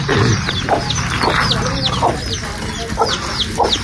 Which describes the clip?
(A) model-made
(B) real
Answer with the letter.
B